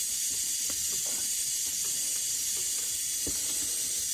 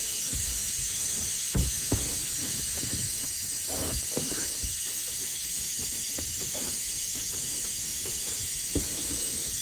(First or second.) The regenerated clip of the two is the second